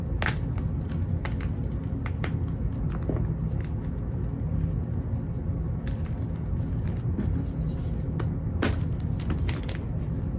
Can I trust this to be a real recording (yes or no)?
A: yes